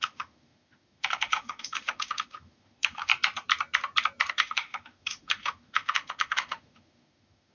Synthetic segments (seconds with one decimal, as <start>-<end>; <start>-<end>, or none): 0.0-3.1; 4.3-7.5